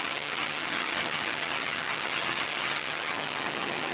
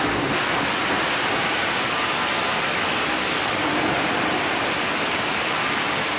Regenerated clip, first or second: first